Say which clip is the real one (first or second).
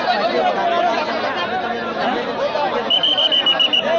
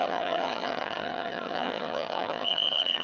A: first